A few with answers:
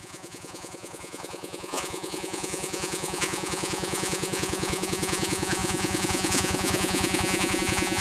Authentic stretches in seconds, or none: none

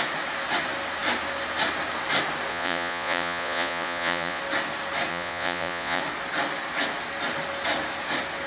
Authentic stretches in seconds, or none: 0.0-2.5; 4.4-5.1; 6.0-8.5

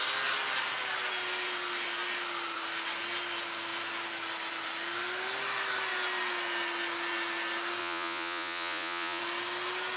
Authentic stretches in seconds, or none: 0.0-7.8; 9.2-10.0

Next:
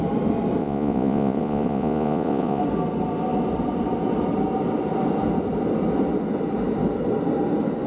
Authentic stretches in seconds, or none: 0.0-0.6; 2.6-7.9